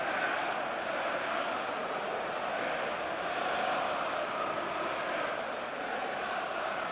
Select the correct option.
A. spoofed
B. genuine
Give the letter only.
B